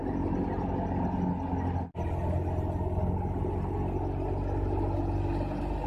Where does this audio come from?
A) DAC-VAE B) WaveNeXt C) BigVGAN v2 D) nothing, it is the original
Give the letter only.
D